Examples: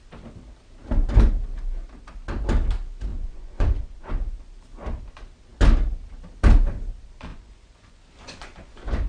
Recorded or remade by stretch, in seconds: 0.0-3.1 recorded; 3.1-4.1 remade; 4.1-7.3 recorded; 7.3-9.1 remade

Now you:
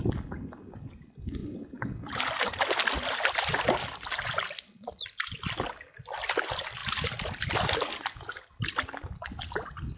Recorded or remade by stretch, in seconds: 0.0-1.4 recorded; 1.4-5.0 remade; 5.0-6.8 recorded; 6.8-7.5 remade; 7.5-10.0 recorded

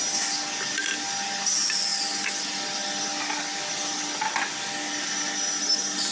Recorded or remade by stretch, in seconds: 0.0-6.1 recorded

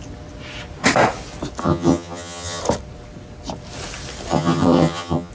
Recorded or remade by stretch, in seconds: 0.0-1.6 recorded; 1.6-2.6 remade; 2.6-4.3 recorded; 4.3-5.3 remade

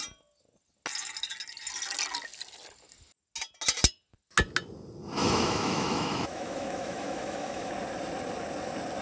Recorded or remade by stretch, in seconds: 0.0-5.2 recorded; 5.2-7.7 remade; 7.7-9.0 recorded